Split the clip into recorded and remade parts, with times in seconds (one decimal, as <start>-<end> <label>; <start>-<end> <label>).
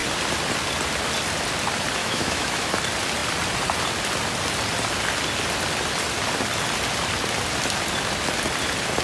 0.0-2.0 recorded; 2.0-2.7 remade; 2.7-9.0 recorded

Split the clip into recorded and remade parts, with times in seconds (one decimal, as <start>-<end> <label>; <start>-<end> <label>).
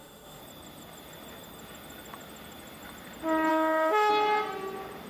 0.0-0.4 remade; 0.4-3.5 recorded; 3.5-4.1 remade; 4.1-5.1 recorded